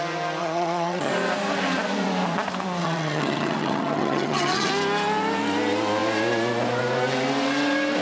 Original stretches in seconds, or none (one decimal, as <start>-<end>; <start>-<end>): 0.0-0.4; 1.1-2.8; 4.7-8.0